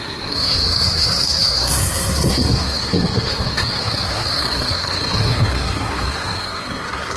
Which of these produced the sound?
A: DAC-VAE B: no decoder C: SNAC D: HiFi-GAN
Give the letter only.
C